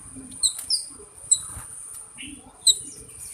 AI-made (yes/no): yes